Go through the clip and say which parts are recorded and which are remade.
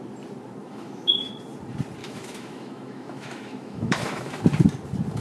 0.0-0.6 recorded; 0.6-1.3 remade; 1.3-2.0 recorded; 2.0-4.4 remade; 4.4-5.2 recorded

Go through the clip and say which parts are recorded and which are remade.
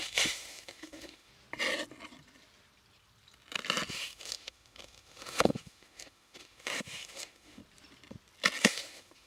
0.0-1.3 remade; 1.3-3.9 recorded; 3.9-7.6 remade; 7.6-8.6 recorded; 8.6-9.3 remade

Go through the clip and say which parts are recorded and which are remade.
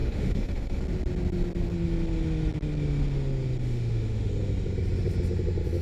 0.0-0.8 remade; 0.8-3.6 recorded; 3.6-4.3 remade; 4.3-5.8 recorded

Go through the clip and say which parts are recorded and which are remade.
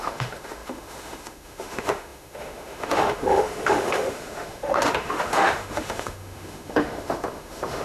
0.0-7.8 remade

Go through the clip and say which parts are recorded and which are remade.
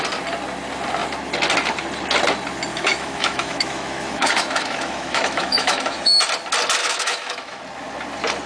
0.0-2.7 recorded; 2.7-6.2 remade; 6.2-6.8 recorded; 6.8-7.6 remade; 7.6-8.5 recorded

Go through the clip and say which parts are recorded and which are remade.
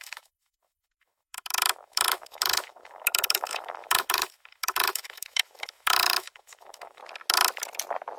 0.0-7.0 remade; 7.0-8.2 recorded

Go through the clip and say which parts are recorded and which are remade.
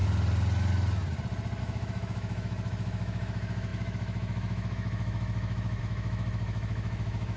0.0-1.6 recorded; 1.6-7.4 remade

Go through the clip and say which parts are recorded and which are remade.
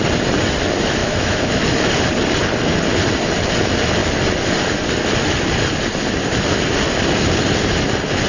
0.0-1.0 recorded; 1.0-1.6 remade; 1.6-8.3 recorded